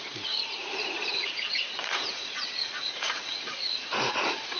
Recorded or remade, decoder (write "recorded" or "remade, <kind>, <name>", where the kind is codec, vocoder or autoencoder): remade, vocoder, Vocos